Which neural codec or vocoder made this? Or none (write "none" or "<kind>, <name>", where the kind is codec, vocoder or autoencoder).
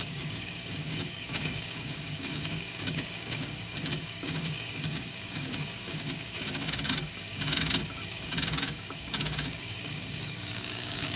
codec, DAC